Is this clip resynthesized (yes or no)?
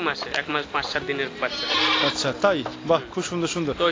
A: no